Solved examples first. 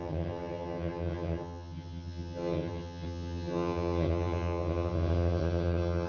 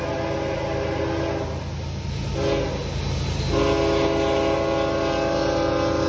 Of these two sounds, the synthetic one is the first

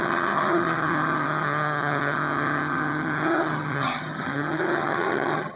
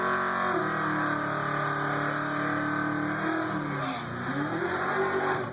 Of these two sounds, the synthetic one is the first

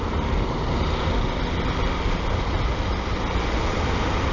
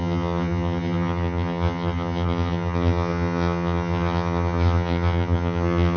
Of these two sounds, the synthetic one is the second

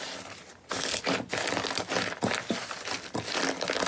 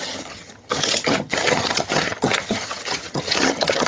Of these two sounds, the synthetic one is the second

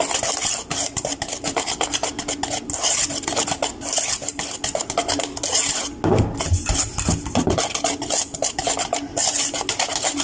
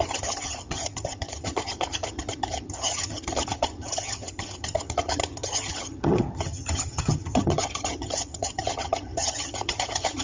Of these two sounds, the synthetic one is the second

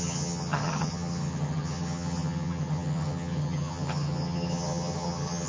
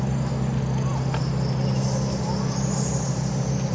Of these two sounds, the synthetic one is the first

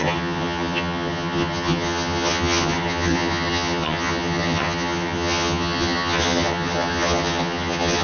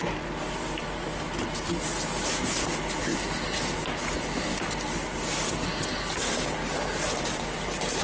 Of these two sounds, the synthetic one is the first